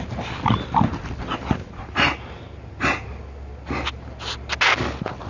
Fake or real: real